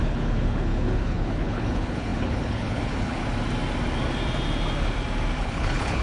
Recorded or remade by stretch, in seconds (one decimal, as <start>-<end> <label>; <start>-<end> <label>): 0.0-3.2 remade; 3.2-5.4 recorded; 5.4-6.0 remade